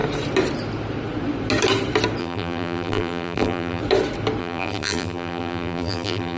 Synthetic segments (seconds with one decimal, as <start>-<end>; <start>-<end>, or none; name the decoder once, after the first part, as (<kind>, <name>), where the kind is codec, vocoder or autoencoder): 2.2-3.8 (vocoder, BigVGAN v2); 4.4-6.4

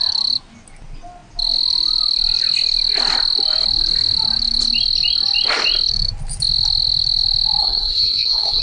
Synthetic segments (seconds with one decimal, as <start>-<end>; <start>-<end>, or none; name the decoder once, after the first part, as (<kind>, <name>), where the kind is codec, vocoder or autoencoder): 7.6-8.6 (codec, SNAC)

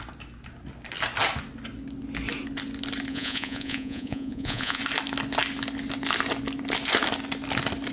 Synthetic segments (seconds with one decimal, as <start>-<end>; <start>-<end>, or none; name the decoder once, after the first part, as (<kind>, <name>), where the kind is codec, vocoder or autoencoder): 3.1-4.8 (vocoder, Vocos)

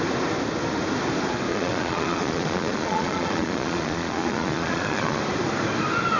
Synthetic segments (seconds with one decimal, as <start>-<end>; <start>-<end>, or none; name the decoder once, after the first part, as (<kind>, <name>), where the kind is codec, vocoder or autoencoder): 1.5-5.2 (vocoder, Vocos)

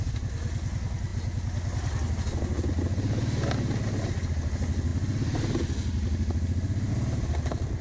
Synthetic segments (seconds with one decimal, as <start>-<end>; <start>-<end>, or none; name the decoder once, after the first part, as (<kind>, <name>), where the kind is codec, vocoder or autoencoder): none